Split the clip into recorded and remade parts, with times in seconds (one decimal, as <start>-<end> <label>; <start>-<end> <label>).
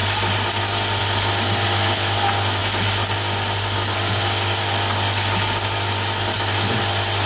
0.0-7.3 recorded